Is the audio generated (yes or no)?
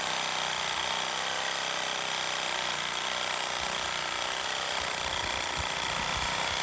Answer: no